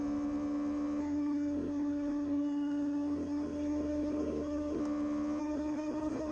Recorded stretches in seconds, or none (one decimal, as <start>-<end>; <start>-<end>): 0.0-1.0; 4.8-5.4